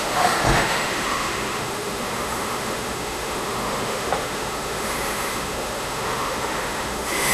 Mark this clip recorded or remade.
remade